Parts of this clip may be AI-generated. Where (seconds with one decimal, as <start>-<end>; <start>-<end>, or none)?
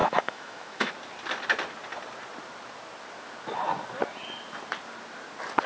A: 0.0-0.9